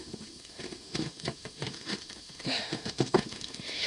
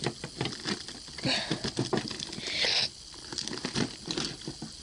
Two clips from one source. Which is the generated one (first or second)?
first